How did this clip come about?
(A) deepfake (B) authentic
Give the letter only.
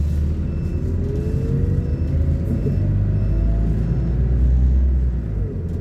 B